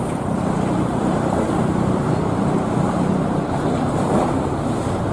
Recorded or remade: remade